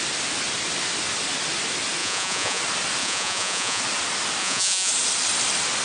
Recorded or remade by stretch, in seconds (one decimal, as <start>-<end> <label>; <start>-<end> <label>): 0.0-2.0 recorded; 2.0-2.6 remade; 2.6-3.0 recorded; 3.0-3.8 remade; 3.8-4.4 recorded; 4.4-4.9 remade; 4.9-5.8 recorded